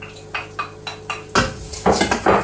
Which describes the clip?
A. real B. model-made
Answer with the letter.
A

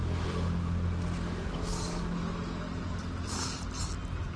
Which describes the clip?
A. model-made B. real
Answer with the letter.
B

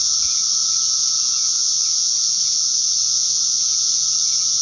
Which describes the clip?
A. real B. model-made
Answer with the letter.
B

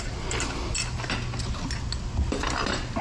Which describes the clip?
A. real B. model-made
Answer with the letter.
A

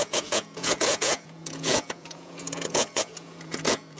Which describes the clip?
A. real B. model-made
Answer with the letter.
B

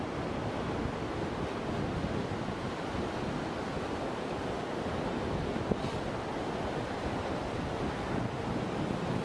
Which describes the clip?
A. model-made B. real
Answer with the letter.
B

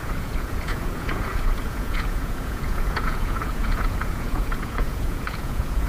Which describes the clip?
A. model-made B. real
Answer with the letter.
A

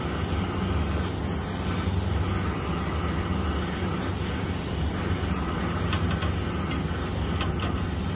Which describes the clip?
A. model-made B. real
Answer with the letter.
B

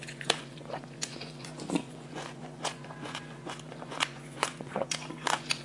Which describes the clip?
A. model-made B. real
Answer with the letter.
A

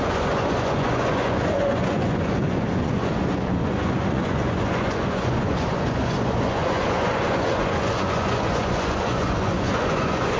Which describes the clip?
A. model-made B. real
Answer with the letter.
A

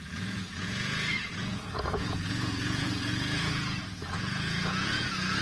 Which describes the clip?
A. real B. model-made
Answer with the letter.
B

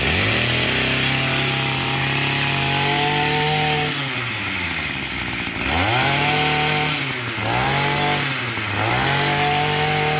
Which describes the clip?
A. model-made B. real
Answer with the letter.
B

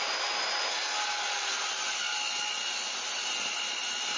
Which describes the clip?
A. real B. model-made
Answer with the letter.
A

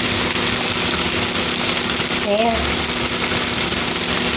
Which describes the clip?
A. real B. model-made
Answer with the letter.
A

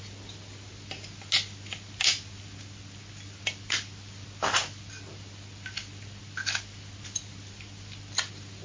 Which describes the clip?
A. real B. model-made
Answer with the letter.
A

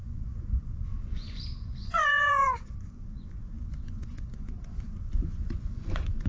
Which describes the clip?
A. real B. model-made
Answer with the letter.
B